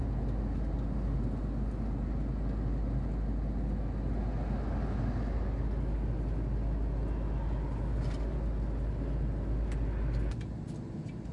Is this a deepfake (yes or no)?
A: no